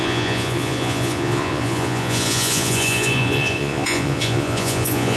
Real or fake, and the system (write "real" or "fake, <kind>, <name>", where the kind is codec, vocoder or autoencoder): fake, vocoder, Vocos